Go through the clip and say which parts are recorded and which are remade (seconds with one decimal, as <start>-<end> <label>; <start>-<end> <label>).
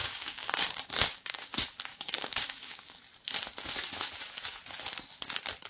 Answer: 0.0-1.5 remade; 1.5-1.9 recorded; 1.9-3.0 remade; 3.0-5.7 recorded